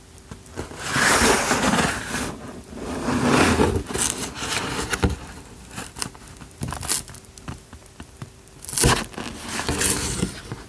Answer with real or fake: real